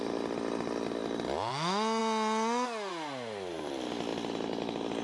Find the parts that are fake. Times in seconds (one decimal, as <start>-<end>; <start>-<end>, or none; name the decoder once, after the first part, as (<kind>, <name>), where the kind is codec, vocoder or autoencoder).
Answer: none